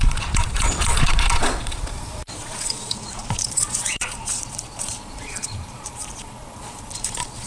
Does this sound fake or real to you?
fake